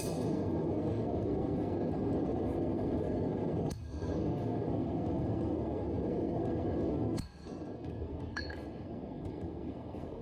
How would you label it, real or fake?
fake